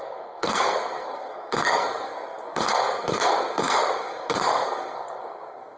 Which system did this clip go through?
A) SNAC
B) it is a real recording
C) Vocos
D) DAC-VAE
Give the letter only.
A